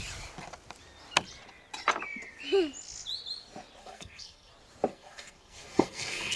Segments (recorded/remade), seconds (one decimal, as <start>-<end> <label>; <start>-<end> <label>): 0.0-3.8 recorded; 3.8-4.5 remade; 4.5-4.9 recorded; 4.9-6.4 remade